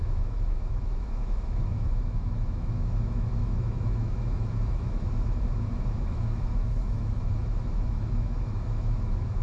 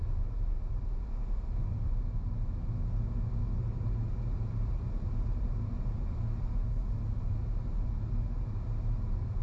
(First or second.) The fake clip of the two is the first